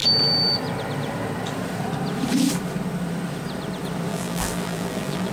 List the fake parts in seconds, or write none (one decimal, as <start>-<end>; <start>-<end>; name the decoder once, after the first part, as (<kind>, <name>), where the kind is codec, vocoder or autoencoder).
4.1-5.3 (vocoder, BigVGAN v2)